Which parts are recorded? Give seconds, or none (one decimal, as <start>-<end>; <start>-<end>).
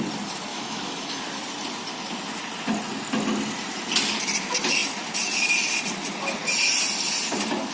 0.0-0.5; 1.2-7.7